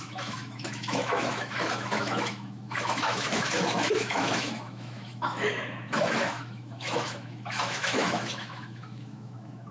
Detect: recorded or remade remade